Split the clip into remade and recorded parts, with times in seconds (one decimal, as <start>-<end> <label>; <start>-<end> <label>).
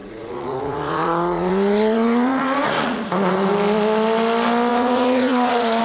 0.0-3.5 remade; 3.5-4.7 recorded; 4.7-5.8 remade